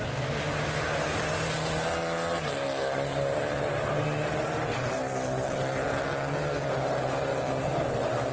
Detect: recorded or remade recorded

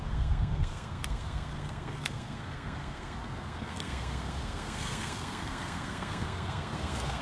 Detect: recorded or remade remade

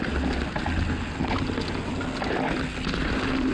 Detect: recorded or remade recorded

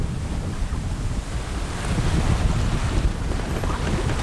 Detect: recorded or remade recorded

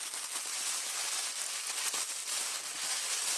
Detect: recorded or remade recorded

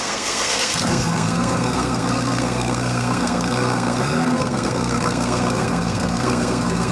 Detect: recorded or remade remade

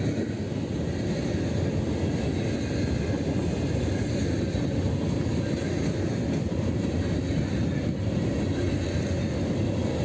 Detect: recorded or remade recorded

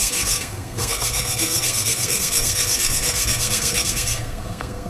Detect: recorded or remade remade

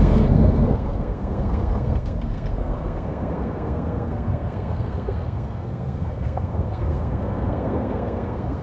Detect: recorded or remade remade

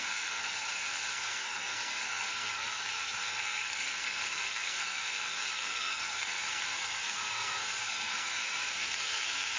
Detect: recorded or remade remade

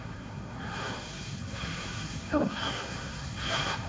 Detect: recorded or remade remade